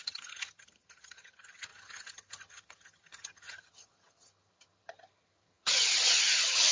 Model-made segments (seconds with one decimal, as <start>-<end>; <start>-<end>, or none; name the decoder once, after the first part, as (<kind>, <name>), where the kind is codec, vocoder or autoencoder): 0.0-6.7 (vocoder, HiFi-GAN)